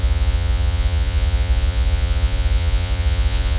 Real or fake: fake